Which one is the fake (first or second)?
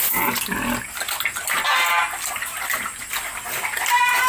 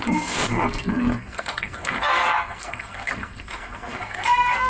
second